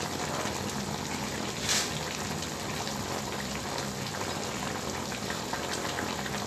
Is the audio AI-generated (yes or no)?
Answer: no